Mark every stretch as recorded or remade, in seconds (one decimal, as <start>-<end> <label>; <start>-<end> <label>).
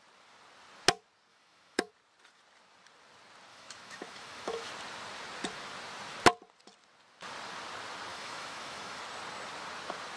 0.0-1.3 recorded; 1.3-1.9 remade; 1.9-3.5 recorded; 3.5-4.7 remade; 4.7-8.1 recorded; 8.1-9.0 remade; 9.0-10.2 recorded